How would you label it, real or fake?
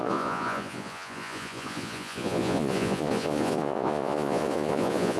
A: fake